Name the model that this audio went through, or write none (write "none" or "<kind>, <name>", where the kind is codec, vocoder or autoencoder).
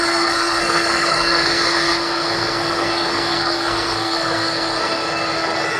codec, SNAC